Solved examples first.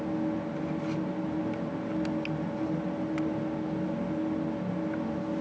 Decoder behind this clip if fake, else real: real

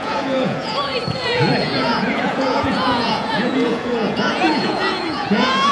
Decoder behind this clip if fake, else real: fake, vocoder, Vocos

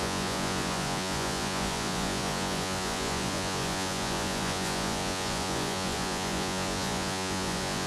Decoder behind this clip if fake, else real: fake, vocoder, Vocos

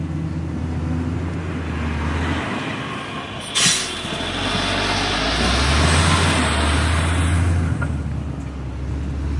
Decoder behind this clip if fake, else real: real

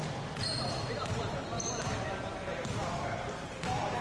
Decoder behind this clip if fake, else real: real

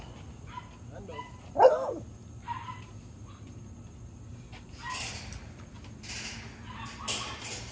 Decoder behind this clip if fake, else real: real